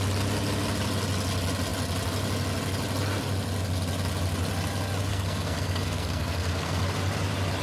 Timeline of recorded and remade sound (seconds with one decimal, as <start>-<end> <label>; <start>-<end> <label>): 0.0-5.1 recorded; 5.1-6.8 remade; 6.8-7.6 recorded